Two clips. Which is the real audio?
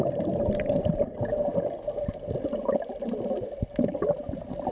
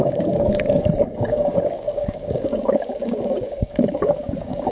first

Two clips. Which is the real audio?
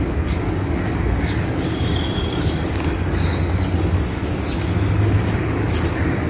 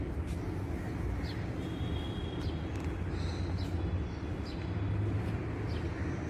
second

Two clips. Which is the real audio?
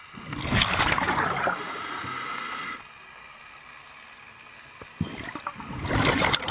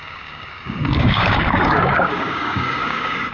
first